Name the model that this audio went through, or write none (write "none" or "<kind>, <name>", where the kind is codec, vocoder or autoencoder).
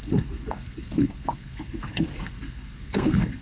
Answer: codec, SNAC